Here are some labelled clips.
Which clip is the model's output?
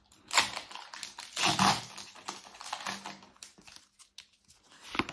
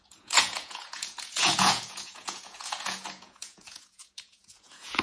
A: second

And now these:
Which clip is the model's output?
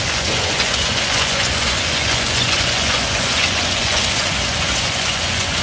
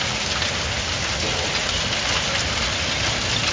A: first